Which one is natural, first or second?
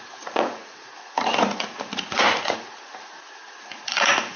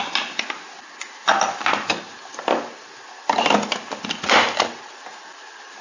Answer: second